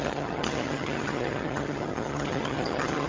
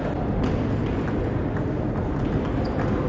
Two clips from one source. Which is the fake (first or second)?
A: first